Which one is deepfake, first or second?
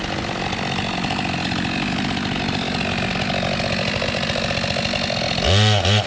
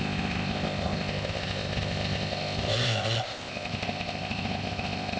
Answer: second